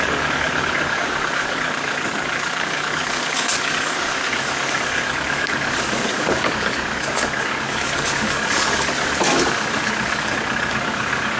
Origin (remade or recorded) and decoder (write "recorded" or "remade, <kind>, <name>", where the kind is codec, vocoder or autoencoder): remade, codec, DAC